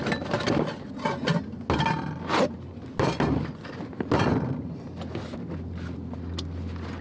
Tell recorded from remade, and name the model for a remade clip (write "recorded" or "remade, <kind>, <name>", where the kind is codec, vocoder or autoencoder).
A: recorded